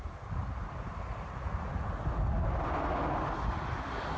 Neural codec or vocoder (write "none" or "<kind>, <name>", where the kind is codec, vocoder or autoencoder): none